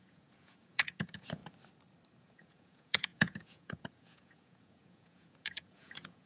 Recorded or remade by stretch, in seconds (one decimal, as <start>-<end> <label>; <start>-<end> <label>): 0.0-1.4 remade; 1.4-2.2 recorded; 2.2-6.3 remade